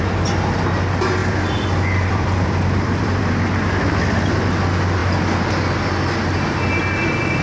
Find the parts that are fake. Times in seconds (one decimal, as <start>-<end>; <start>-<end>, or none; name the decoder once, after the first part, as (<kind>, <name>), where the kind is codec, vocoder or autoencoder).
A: 1.2-3.3 (vocoder, BigVGAN v2)